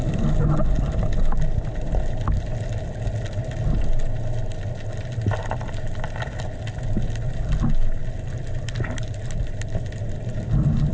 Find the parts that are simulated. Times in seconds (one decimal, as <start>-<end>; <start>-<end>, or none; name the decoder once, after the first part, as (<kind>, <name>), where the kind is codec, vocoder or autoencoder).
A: none